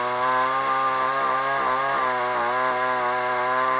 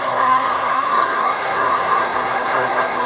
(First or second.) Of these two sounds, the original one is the first